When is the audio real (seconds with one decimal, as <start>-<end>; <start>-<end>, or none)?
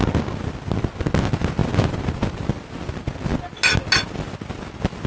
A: 0.0-5.1